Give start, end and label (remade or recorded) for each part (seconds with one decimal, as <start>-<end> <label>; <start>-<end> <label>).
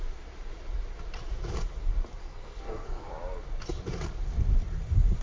0.0-2.2 recorded; 2.2-3.1 remade; 3.1-5.2 recorded